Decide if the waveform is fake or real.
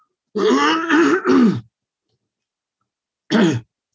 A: real